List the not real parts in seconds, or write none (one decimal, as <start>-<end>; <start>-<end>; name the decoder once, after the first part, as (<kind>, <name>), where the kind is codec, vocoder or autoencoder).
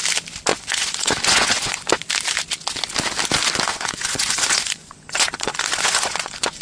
0.5-1.9 (vocoder, Vocos); 3.7-6.6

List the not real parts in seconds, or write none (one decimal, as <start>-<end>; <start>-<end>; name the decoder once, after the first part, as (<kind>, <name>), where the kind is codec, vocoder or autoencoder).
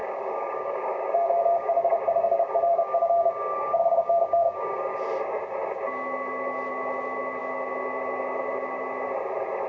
0.0-4.8 (codec, DAC)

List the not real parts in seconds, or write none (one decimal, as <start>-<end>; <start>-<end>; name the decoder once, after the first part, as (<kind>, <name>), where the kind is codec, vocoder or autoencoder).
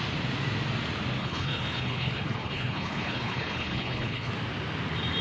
1.2-4.3 (codec, HILCodec)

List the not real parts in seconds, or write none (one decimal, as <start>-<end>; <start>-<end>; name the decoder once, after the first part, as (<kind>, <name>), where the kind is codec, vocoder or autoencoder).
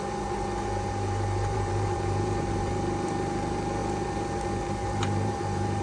0.0-3.8 (vocoder, BigVGAN v2); 4.6-5.8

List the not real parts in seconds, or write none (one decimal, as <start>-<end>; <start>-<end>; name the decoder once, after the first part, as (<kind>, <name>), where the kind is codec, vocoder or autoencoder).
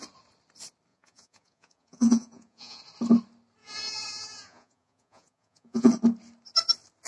0.9-2.8 (vocoder, Vocos); 3.6-5.9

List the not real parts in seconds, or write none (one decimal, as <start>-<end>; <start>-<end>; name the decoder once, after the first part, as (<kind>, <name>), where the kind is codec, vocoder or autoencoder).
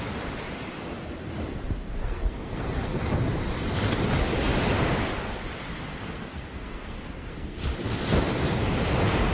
2.0-3.0 (codec, SNAC); 5.9-7.6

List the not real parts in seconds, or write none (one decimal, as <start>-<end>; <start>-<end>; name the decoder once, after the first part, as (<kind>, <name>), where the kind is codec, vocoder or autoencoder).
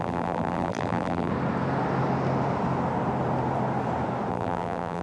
0.0-1.3 (vocoder, BigVGAN v2); 4.3-5.0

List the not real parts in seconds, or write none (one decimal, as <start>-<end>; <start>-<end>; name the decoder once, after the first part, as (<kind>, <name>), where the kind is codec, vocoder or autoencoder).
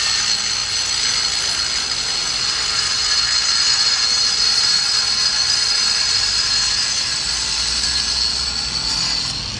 5.8-8.2 (vocoder, BigVGAN v2)